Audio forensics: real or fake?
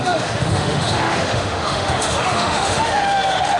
fake